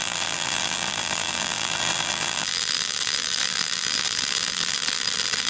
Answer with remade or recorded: remade